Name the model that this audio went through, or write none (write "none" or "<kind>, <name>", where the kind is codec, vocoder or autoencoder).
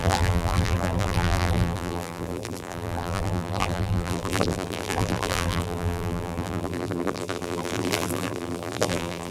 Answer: vocoder, BigVGAN v2